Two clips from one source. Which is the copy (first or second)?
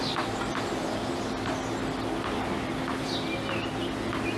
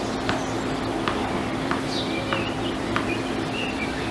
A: second